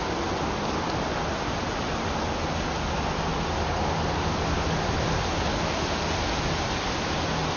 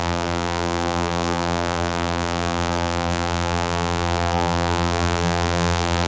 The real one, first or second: first